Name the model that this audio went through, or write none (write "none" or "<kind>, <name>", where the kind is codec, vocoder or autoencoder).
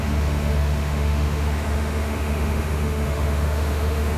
autoencoder, DAC-VAE